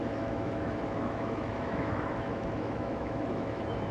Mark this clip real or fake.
fake